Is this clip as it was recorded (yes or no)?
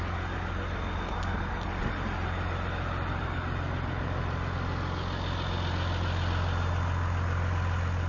yes